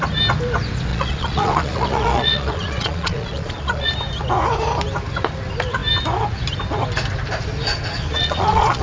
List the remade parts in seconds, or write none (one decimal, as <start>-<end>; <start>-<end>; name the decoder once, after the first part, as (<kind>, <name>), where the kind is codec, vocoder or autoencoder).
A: 0.9-3.9 (vocoder, Vocos); 8.1-8.8

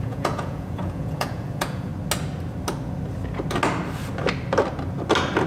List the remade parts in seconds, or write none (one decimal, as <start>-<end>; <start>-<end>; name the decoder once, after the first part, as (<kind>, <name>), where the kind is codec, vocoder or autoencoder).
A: 0.0-1.9 (vocoder, Vocos)

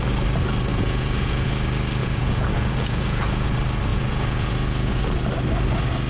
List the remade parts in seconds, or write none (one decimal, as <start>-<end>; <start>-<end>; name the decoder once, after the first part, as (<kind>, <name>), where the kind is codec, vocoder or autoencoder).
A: 0.7-1.5 (vocoder, Vocos); 2.0-3.5; 3.9-5.0